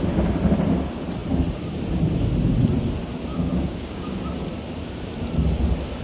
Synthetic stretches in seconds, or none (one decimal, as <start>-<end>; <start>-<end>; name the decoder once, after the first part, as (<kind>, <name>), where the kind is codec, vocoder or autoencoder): 3.3-4.1 (codec, DAC)

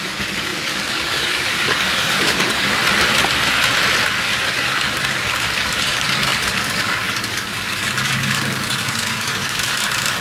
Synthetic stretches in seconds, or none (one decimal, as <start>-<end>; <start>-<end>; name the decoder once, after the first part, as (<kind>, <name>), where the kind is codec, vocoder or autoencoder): 0.0-2.8 (codec, DAC); 4.2-10.2

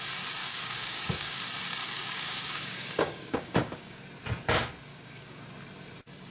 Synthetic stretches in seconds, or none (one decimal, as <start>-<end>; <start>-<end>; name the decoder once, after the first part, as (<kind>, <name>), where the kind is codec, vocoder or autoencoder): 0.4-1.4 (codec, DAC); 1.8-4.0; 4.9-5.4

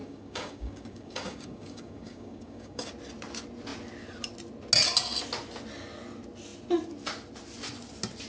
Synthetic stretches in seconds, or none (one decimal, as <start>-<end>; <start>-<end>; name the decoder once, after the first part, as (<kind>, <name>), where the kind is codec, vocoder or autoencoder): 0.0-2.9 (codec, DAC)

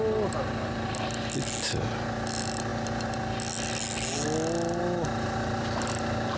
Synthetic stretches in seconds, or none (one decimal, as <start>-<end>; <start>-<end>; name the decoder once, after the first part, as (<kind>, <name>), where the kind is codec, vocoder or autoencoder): none

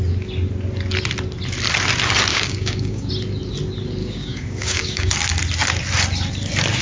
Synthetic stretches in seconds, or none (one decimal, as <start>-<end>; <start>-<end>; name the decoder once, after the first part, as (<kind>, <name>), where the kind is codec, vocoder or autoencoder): 2.3-3.1 (codec, DAC); 4.0-5.1

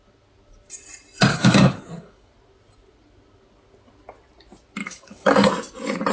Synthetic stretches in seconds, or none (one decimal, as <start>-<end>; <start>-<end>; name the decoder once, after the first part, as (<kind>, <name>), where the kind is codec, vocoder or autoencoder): 1.3-2.3 (codec, DAC); 4.8-5.5

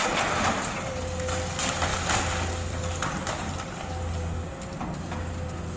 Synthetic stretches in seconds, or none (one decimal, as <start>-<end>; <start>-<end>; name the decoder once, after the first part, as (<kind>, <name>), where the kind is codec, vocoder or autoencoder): none